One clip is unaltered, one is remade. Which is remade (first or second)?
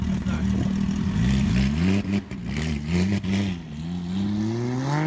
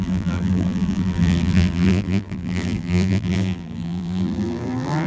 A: second